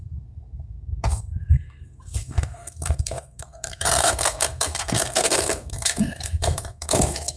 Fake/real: fake